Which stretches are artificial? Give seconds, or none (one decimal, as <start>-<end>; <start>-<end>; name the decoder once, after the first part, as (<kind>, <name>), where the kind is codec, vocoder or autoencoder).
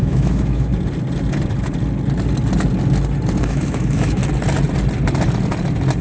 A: 0.0-0.7 (autoencoder, DAC-VAE); 3.4-4.2